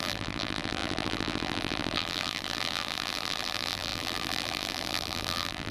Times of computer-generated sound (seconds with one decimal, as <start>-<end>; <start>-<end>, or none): 0.0-5.7